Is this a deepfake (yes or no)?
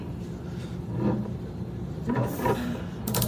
yes